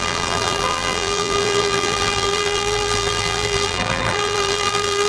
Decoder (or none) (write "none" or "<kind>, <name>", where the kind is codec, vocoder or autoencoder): vocoder, BigVGAN v2